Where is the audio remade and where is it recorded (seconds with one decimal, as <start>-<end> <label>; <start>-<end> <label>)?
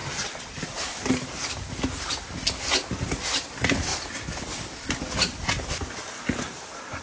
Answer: 0.0-1.7 remade; 1.7-7.0 recorded